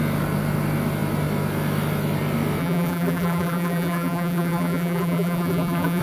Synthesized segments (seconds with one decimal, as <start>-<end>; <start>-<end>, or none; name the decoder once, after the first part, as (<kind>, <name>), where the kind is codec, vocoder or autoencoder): 2.6-6.0 (vocoder, BigVGAN v2)